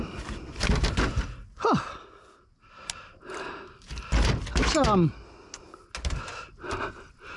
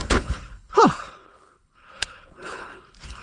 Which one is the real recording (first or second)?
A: first